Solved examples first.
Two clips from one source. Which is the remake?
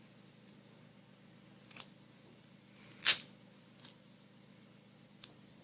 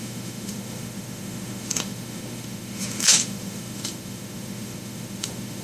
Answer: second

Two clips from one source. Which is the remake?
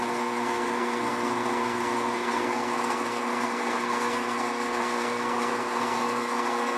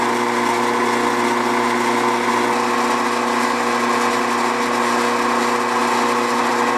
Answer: first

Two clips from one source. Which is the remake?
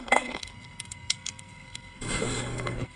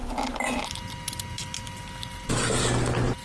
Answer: first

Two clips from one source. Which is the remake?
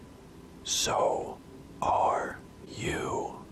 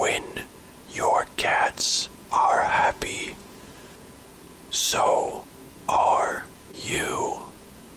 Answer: second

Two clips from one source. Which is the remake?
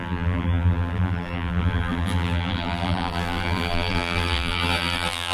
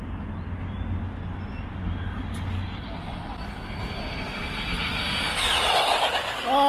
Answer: first